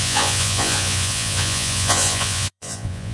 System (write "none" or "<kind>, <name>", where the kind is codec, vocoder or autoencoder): vocoder, Vocos